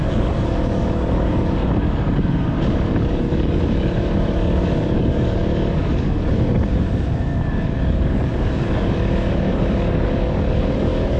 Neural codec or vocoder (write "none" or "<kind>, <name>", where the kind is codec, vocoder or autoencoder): codec, DAC